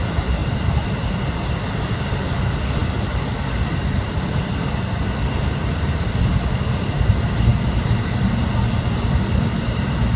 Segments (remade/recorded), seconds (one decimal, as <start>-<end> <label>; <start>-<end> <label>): 0.0-0.4 recorded; 0.4-1.5 remade; 1.5-10.2 recorded